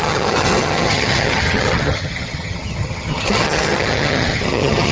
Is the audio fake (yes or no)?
yes